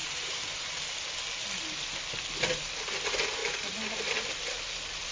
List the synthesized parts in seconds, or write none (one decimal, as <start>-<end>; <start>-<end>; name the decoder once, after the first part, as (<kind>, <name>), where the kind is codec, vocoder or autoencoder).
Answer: 0.0-0.8 (vocoder, BigVGAN v2)